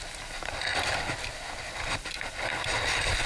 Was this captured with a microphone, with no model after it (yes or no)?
yes